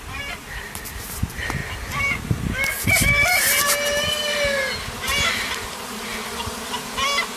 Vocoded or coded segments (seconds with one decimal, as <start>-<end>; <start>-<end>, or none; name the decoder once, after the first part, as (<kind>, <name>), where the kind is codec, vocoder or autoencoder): none